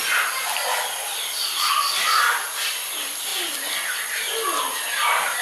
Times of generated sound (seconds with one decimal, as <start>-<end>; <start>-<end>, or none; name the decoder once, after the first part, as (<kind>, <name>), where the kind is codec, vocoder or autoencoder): none